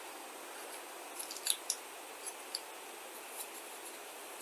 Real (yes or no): yes